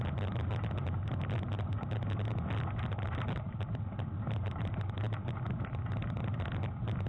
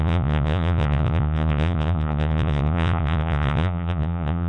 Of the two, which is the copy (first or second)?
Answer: second